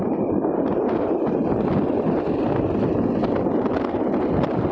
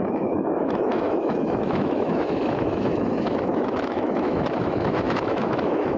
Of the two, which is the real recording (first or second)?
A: first